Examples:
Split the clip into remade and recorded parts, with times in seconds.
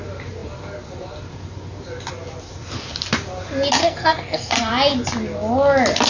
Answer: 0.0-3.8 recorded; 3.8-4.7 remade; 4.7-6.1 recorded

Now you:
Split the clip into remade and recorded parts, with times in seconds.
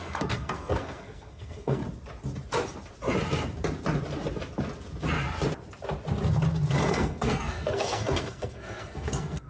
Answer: 0.0-1.8 remade; 1.8-6.9 recorded; 6.9-9.5 remade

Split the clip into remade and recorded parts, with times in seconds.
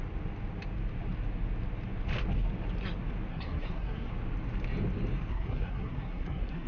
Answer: 0.0-3.3 recorded; 3.3-4.1 remade; 4.1-5.3 recorded; 5.3-6.7 remade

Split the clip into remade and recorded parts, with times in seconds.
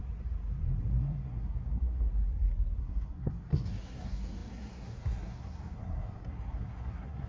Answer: 0.0-1.0 recorded; 1.0-2.1 remade; 2.1-2.8 recorded; 2.8-7.3 remade